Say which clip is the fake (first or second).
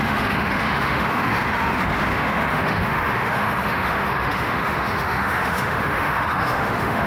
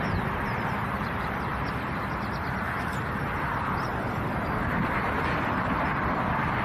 first